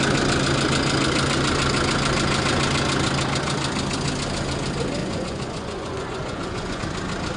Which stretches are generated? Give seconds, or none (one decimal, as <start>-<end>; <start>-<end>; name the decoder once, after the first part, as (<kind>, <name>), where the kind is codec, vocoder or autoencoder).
5.0-6.8 (vocoder, Vocos)